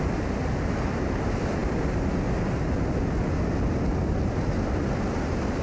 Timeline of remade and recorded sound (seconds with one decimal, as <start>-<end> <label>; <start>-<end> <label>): 0.0-5.6 recorded